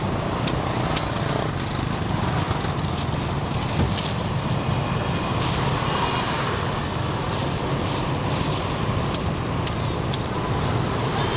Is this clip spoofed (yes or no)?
no